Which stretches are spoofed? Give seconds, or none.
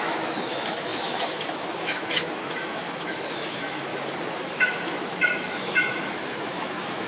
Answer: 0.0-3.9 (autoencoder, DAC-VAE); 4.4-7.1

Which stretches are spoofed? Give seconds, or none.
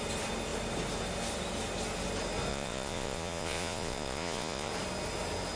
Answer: 2.5-4.7 (vocoder, Vocos)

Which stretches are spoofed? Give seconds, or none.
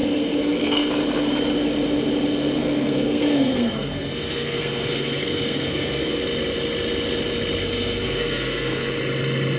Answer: 0.0-0.9 (codec, SNAC); 2.6-6.2; 7.6-8.9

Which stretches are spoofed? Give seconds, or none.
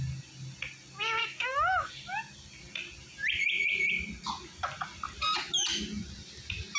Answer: 1.2-1.9 (autoencoder, DAC-VAE)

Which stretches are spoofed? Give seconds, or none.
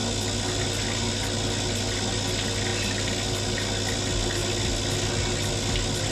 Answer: none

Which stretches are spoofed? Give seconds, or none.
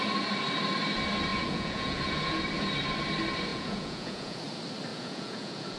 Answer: 1.3-2.4 (vocoder, Vocos); 3.5-4.4; 4.9-5.8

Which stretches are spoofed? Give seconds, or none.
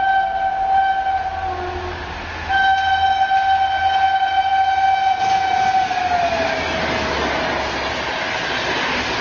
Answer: none